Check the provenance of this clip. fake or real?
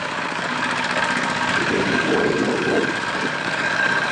fake